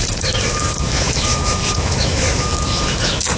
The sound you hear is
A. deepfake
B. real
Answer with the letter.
A